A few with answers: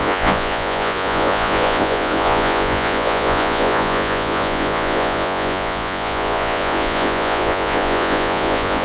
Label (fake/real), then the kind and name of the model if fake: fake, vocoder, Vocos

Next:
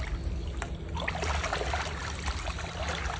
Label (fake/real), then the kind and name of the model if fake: real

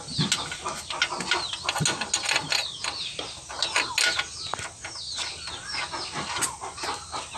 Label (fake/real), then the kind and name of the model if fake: real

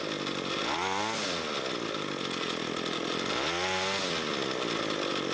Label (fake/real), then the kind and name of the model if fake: real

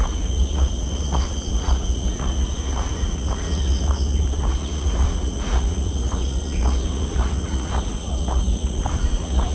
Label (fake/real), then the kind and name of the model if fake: fake, vocoder, Vocos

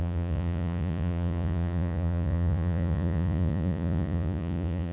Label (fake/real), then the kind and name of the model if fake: fake, vocoder, Vocos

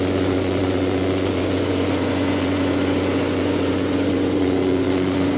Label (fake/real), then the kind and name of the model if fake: fake, vocoder, Vocos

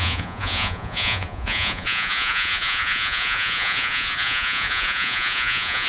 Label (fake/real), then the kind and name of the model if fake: fake, vocoder, Vocos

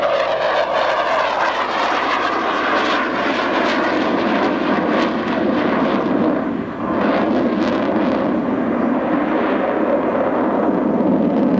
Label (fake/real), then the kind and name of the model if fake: real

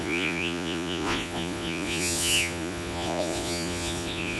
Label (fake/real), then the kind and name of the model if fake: fake, vocoder, Vocos